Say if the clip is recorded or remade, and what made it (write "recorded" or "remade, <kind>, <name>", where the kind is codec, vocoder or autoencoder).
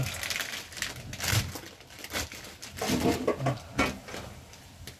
recorded